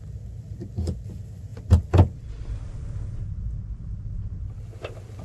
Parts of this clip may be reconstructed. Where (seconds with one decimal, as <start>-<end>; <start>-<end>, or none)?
none